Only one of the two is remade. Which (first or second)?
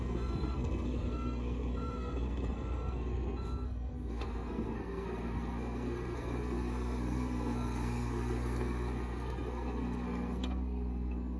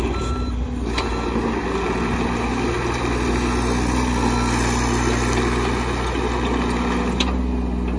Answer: first